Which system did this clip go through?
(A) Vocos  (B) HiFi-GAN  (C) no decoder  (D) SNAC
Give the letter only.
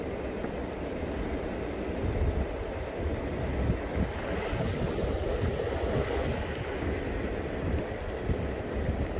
C